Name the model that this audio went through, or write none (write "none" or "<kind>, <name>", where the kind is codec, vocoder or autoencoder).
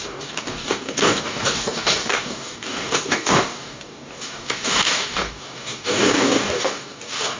codec, DAC